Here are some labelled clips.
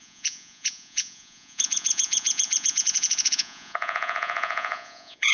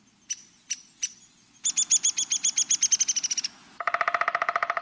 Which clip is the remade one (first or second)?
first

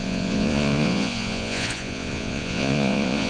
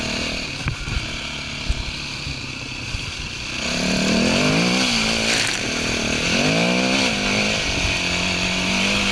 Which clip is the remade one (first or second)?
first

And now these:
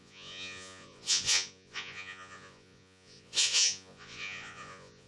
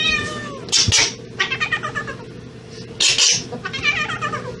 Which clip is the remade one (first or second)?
first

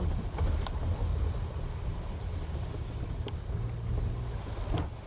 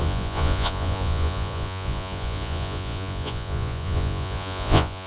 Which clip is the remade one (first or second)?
second